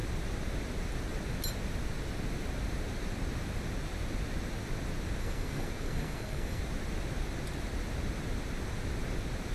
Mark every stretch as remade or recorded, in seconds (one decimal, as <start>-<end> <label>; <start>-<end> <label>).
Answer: 0.0-5.2 recorded; 5.2-6.6 remade; 6.6-9.5 recorded